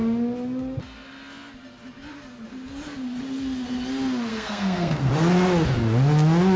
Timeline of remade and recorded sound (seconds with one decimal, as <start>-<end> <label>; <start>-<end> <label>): 0.0-4.3 recorded; 4.3-5.1 remade; 5.1-6.6 recorded